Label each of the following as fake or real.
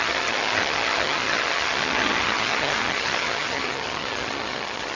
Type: fake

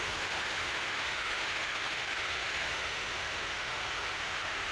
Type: fake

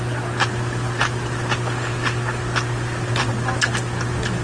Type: real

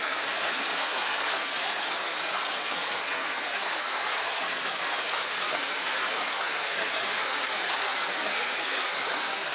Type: fake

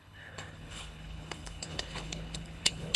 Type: fake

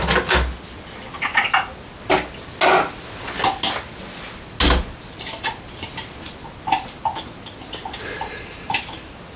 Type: real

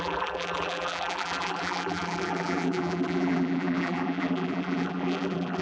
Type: fake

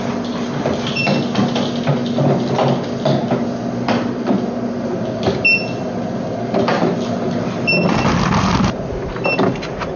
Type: real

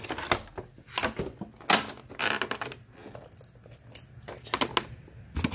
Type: real